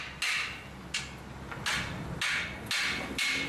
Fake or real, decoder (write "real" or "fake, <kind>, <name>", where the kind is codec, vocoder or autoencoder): real